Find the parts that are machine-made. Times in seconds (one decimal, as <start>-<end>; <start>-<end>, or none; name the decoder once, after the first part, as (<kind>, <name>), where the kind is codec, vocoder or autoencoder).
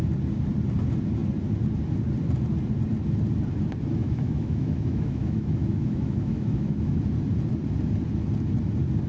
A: 4.0-7.0 (autoencoder, DAC-VAE)